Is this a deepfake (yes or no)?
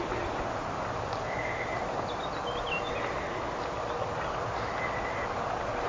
no